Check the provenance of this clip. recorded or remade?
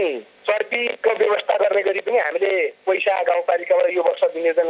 recorded